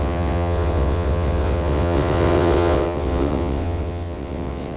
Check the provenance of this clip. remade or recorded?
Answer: remade